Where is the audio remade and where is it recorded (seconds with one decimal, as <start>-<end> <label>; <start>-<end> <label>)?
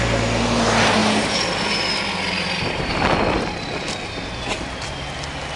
0.0-5.6 recorded